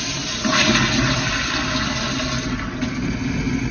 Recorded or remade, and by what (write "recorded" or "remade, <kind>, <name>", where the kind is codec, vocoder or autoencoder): recorded